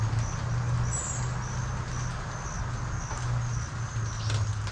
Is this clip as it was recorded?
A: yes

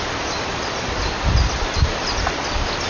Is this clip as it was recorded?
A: yes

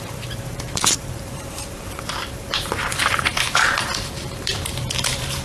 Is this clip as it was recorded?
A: no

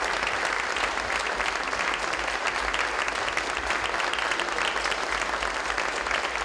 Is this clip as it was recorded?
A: yes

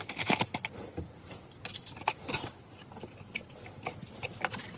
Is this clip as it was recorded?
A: yes